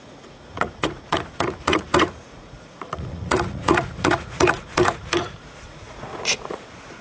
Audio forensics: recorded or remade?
remade